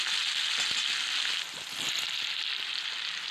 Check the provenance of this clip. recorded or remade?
recorded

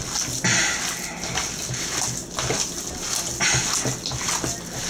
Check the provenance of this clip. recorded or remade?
recorded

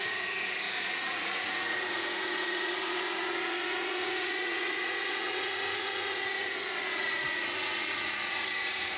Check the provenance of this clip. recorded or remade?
remade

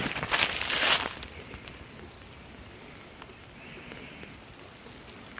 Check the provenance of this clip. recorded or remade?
recorded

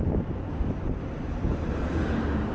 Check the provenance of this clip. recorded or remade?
recorded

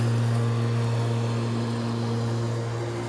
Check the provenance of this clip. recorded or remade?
recorded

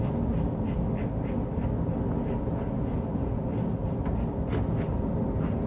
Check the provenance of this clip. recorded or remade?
recorded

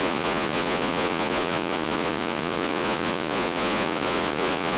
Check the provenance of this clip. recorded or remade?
remade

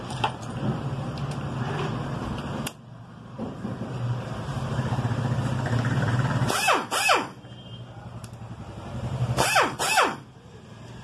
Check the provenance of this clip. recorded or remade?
remade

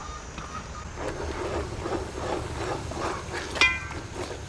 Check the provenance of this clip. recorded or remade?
recorded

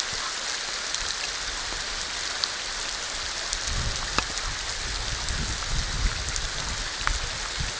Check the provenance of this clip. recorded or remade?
recorded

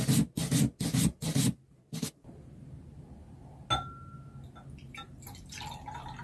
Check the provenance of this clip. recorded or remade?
recorded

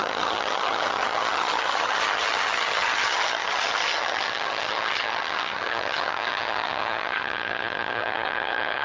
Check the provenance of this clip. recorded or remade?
remade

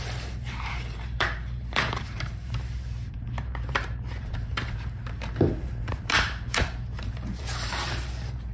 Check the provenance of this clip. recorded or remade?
remade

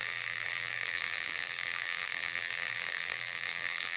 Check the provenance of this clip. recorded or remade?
remade